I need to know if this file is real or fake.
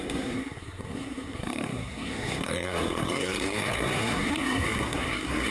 fake